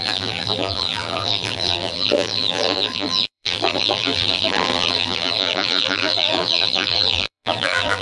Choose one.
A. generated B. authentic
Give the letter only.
A